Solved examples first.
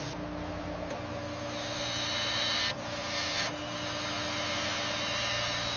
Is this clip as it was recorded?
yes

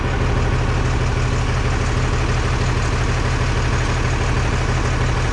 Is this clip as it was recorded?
yes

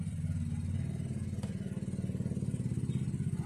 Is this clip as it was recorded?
yes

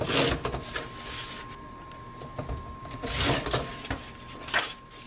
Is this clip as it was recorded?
yes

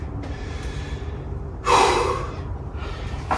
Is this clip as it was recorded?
no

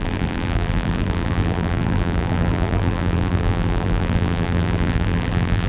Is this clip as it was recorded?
no